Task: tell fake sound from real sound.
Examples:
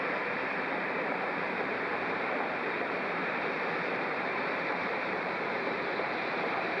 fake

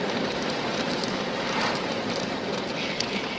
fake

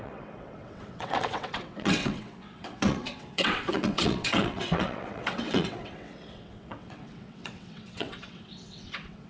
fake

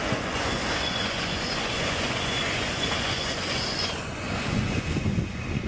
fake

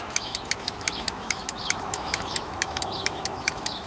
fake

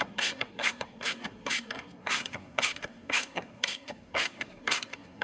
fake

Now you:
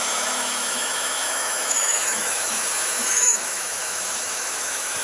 fake